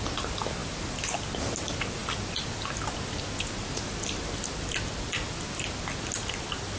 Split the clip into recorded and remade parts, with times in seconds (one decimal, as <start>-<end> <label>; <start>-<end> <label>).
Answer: 0.0-6.8 recorded